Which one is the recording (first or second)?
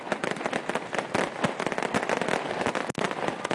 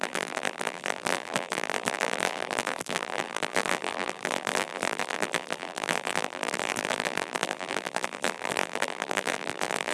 first